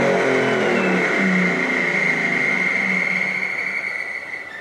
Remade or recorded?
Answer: recorded